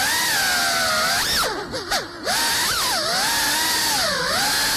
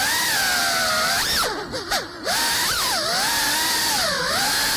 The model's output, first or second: second